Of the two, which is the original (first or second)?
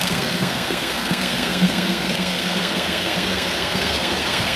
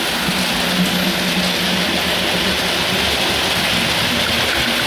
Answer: second